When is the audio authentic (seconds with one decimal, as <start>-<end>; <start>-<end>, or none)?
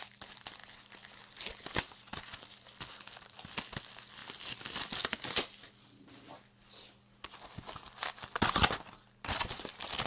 0.0-10.1